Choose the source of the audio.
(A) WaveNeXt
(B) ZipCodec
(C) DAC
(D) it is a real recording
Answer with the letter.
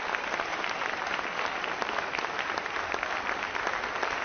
D